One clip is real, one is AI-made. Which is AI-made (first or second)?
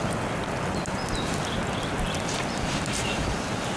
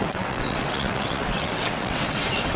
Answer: second